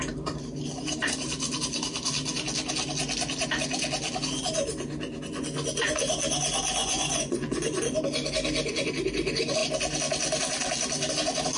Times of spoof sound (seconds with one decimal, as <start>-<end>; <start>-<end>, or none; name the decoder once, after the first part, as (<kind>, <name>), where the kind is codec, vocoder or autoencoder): 6.8-7.8 (vocoder, Vocos)